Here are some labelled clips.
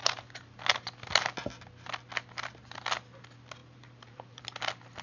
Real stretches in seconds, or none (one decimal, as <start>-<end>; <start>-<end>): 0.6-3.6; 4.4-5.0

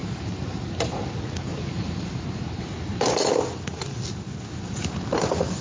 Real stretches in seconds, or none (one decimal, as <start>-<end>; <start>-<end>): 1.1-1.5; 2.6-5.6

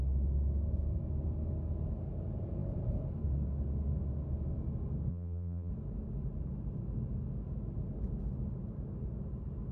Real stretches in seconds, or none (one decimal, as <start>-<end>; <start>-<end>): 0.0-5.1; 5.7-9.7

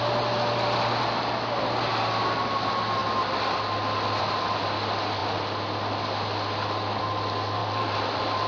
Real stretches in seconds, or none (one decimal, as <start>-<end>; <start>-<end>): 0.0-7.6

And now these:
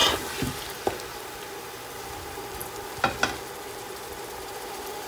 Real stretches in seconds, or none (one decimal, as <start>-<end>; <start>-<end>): 0.0-1.9; 2.6-3.8